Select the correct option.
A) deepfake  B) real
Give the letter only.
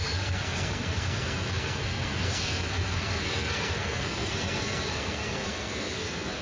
A